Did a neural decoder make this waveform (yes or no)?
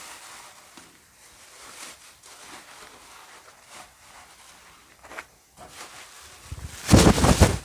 yes